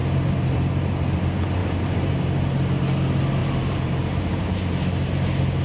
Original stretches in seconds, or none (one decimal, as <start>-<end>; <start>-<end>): 0.7-1.6; 2.2-3.4; 4.7-5.6